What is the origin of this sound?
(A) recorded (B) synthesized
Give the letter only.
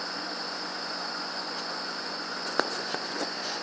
B